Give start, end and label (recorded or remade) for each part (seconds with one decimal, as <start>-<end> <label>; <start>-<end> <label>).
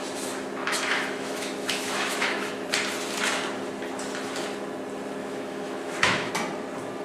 0.0-0.6 recorded; 0.6-2.5 remade; 2.5-5.2 recorded; 5.2-6.3 remade; 6.3-7.0 recorded